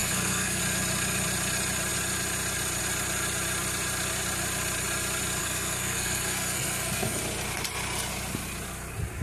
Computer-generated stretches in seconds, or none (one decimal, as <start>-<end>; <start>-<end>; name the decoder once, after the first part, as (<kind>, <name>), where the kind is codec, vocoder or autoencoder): 0.0-0.6 (codec, SNAC); 5.4-7.2